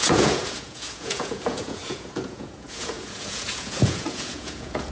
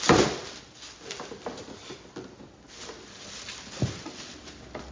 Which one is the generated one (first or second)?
first